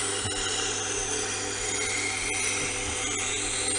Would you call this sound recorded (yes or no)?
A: yes